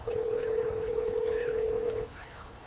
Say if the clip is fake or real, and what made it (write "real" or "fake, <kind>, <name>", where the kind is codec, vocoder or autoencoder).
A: fake, codec, HILCodec